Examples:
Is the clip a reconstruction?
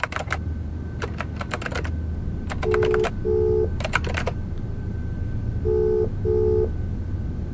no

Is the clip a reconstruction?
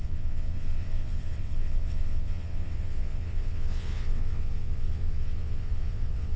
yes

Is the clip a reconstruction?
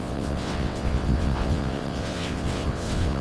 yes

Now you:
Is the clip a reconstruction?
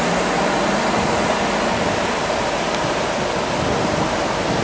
no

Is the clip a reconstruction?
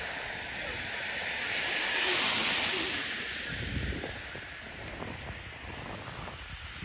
no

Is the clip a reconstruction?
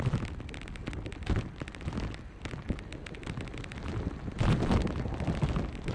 no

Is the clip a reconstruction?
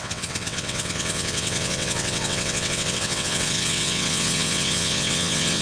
yes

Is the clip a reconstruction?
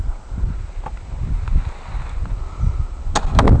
no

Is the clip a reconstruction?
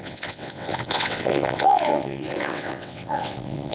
yes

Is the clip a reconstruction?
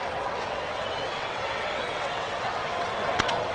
yes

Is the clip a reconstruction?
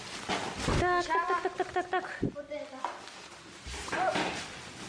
no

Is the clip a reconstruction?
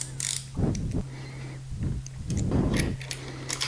no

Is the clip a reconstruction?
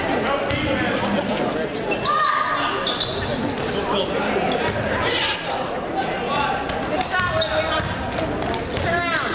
no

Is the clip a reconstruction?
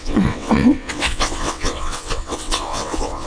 yes